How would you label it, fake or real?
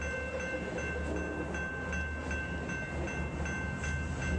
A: real